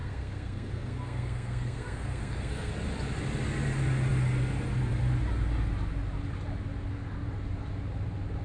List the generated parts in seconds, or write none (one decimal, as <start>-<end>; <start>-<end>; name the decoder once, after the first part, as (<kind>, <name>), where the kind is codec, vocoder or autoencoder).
0.0-2.7 (codec, SNAC)

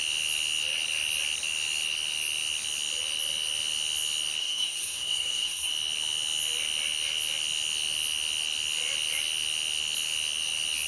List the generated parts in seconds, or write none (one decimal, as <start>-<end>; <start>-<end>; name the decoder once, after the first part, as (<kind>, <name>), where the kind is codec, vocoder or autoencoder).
4.4-5.7 (codec, SNAC)

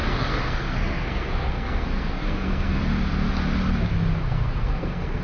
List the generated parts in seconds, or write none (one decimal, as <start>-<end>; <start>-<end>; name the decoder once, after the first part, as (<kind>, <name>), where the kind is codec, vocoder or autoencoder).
0.0-2.8 (codec, SNAC); 4.2-5.2

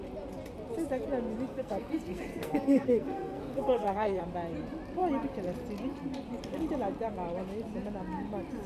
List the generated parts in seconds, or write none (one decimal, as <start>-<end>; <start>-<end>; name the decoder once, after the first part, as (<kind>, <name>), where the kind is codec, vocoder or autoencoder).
1.5-4.2 (codec, SNAC)